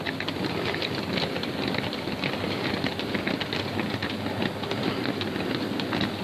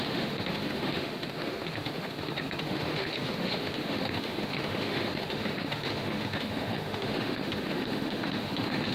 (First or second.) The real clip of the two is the first